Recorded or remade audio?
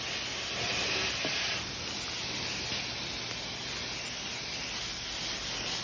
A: recorded